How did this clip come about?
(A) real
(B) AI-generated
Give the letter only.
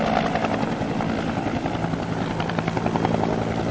A